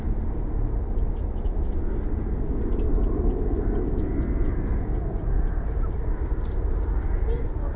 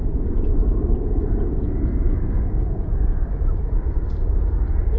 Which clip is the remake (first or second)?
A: second